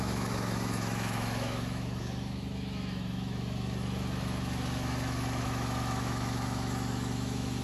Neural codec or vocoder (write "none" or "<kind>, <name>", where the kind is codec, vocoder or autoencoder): autoencoder, DAC-VAE